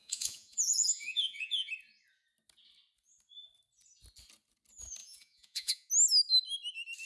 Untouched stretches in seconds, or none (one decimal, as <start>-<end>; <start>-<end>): 1.7-5.0; 5.9-7.1